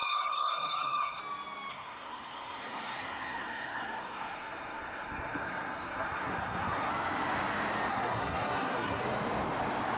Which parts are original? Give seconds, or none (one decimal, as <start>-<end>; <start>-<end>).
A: 1.2-1.7; 6.9-7.9; 9.0-10.0